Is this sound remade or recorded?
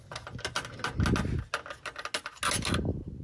recorded